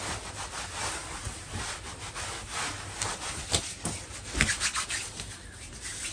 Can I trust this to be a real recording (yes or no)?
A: yes